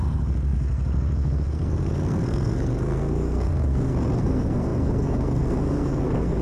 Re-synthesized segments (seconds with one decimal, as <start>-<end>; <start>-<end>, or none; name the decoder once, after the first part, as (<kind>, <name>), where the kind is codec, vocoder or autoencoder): 0.0-6.4 (codec, SNAC)